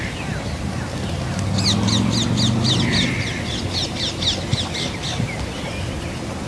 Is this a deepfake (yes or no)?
no